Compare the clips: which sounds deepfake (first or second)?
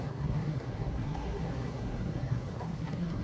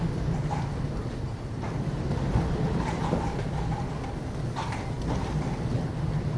first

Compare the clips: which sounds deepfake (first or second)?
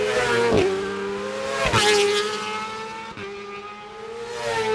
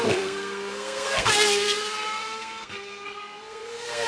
second